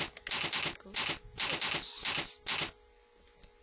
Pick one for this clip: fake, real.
real